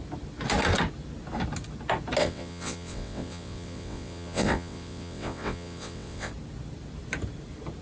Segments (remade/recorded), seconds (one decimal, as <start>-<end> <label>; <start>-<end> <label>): 0.0-2.2 recorded; 2.2-6.3 remade; 6.3-7.8 recorded